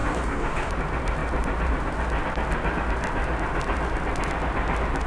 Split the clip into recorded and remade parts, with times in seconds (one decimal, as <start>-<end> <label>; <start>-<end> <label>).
0.0-0.7 remade; 0.7-5.1 recorded